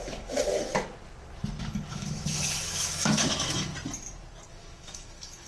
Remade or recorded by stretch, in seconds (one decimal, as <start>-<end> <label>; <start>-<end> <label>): 0.0-0.7 remade; 0.7-1.6 recorded; 1.6-3.7 remade; 3.7-4.5 recorded; 4.5-5.5 remade